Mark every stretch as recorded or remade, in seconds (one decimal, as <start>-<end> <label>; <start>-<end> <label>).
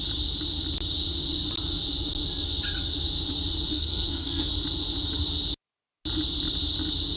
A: 0.0-3.7 recorded; 3.7-4.5 remade; 4.5-7.2 recorded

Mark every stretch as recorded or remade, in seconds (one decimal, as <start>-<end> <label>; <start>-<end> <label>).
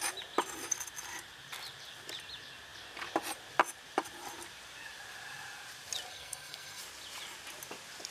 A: 0.0-6.1 recorded; 6.1-6.8 remade; 6.8-8.1 recorded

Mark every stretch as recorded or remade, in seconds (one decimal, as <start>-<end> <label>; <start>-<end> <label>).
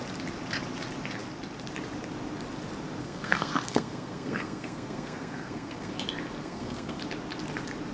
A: 0.0-3.0 recorded; 3.0-5.9 remade; 5.9-6.4 recorded; 6.4-7.0 remade; 7.0-7.9 recorded